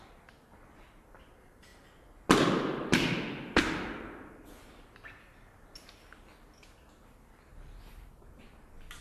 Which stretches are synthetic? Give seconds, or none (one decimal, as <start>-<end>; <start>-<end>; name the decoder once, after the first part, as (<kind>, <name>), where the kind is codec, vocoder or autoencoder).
7.5-8.3 (vocoder, BigVGAN v2)

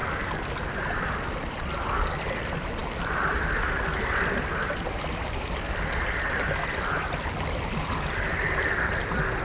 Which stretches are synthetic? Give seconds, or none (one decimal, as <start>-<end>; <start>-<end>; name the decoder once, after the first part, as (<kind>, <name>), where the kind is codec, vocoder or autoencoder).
none

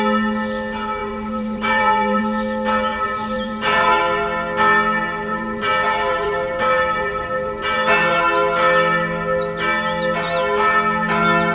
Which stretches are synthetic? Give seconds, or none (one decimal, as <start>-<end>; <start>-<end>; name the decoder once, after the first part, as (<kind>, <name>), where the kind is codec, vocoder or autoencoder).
1.0-2.2 (vocoder, BigVGAN v2); 2.9-4.0; 5.3-8.2

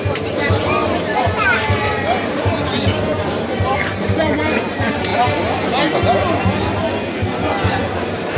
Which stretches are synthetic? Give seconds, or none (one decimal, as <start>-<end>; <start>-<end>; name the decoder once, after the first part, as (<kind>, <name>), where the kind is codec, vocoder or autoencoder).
0.0-5.1 (vocoder, BigVGAN v2); 7.7-8.4